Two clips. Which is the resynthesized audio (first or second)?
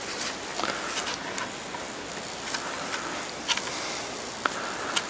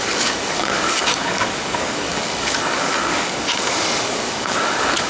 second